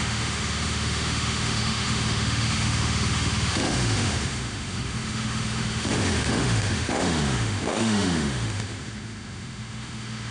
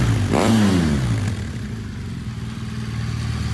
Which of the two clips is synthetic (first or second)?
first